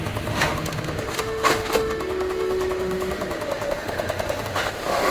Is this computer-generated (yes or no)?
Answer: yes